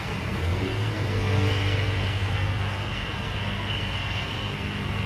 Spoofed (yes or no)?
yes